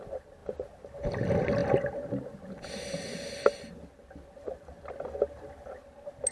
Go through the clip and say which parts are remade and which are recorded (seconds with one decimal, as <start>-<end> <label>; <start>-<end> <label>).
0.0-6.3 recorded